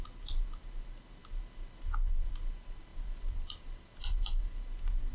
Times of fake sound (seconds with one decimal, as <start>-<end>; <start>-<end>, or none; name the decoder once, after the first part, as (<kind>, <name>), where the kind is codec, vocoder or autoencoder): 2.9-4.6 (vocoder, BigVGAN v2)